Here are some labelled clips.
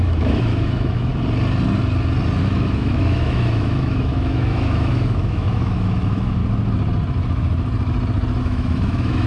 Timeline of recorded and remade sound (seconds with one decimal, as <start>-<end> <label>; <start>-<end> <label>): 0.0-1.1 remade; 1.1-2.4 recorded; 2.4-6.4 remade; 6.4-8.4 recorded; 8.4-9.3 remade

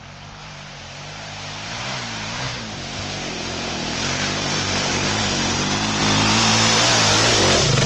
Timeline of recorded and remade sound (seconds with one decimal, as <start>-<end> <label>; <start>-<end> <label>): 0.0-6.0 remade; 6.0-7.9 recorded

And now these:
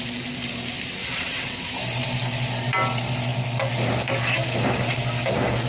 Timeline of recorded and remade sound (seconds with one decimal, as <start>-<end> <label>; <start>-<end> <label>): 0.0-1.0 recorded; 1.0-1.7 remade; 1.7-5.7 recorded